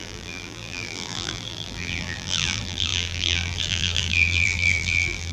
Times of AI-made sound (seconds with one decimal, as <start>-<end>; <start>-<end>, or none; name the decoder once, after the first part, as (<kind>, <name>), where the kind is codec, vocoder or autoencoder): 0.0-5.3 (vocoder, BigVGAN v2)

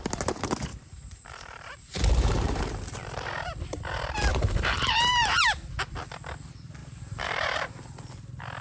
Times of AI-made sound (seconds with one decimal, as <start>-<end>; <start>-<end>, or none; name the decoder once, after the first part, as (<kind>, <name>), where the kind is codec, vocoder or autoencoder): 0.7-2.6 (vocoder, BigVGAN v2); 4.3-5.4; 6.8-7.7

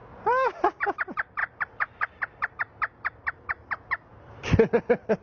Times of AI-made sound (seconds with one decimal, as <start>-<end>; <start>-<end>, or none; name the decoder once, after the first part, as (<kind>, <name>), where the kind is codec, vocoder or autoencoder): 1.4-2.6 (vocoder, BigVGAN v2); 4.1-4.8

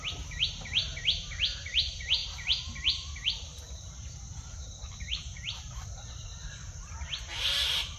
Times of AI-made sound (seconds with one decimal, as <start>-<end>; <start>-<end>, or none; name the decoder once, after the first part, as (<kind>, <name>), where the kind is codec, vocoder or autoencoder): 0.0-2.2 (vocoder, BigVGAN v2); 3.7-8.0

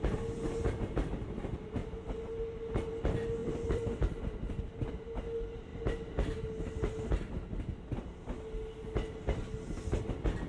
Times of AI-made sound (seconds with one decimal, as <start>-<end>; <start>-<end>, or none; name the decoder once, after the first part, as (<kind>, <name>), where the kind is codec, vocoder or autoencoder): 3.4-4.9 (vocoder, BigVGAN v2)

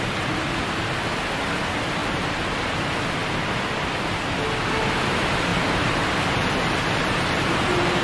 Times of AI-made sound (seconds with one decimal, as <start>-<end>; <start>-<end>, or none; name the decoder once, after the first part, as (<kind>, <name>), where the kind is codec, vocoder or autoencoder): 5.5-8.0 (vocoder, BigVGAN v2)